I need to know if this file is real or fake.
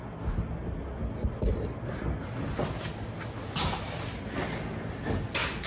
real